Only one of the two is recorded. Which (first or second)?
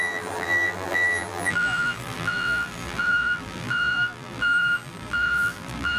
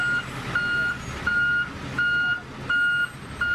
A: second